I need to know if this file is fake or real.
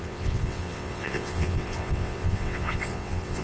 fake